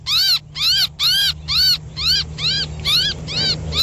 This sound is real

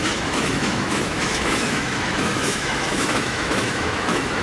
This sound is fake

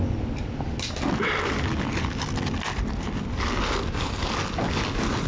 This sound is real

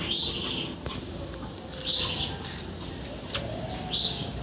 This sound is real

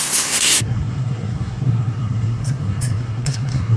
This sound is fake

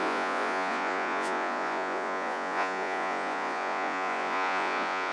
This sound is fake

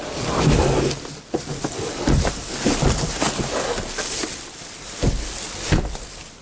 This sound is real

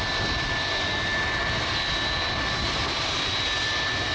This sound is real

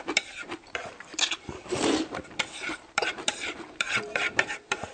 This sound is fake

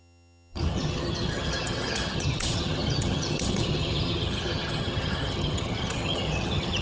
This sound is fake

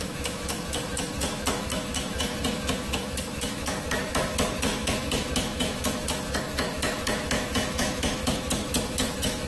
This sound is fake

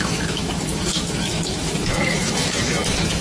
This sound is fake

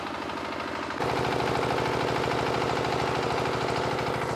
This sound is real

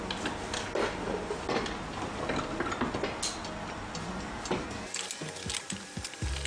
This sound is real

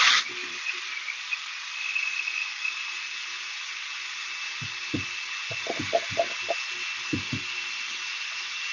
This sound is real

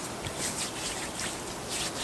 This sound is real